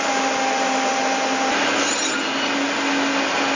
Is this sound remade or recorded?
recorded